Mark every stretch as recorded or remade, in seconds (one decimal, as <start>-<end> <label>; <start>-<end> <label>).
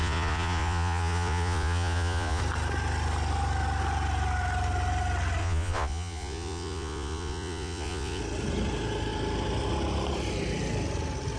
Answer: 0.0-2.4 remade; 2.4-5.4 recorded; 5.4-8.2 remade; 8.2-11.4 recorded